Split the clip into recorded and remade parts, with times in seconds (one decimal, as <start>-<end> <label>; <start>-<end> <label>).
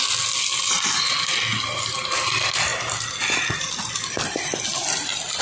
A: 0.0-5.4 recorded